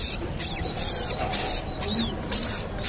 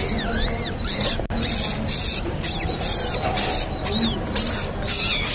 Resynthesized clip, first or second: first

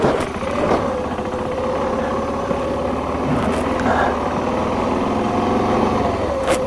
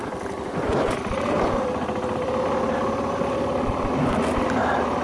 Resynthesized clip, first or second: second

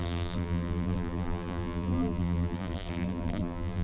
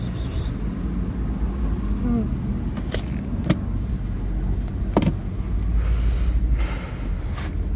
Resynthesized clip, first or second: first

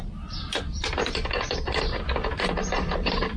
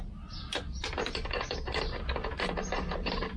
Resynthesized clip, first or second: first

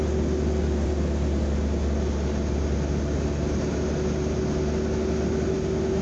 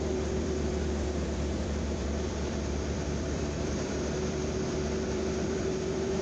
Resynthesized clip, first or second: second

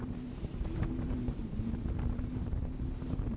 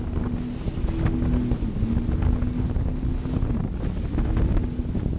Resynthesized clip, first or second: first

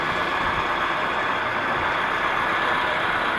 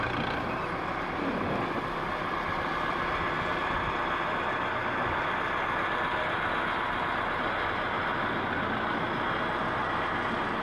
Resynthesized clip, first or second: first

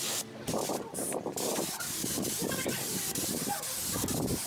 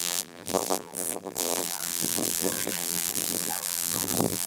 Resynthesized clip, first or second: second